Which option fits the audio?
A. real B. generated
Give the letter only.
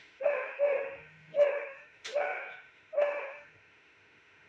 B